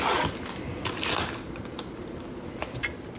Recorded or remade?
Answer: recorded